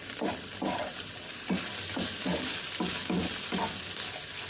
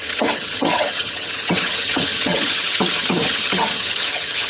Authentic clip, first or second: first